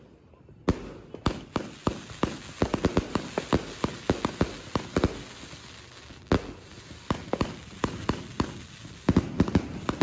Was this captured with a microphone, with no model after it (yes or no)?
yes